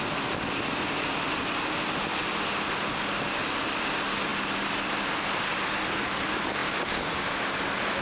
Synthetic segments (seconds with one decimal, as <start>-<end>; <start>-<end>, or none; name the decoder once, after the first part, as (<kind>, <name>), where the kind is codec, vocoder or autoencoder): none